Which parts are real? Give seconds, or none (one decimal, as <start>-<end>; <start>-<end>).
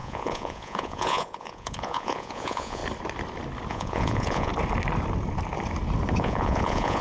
2.8-3.7; 4.5-6.2